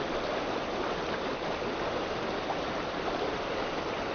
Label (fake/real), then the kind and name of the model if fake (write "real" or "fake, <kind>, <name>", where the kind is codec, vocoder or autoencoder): real